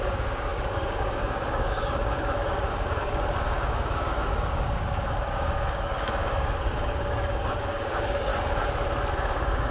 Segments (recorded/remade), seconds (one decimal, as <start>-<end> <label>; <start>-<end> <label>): 0.0-8.3 remade; 8.3-9.1 recorded; 9.1-9.7 remade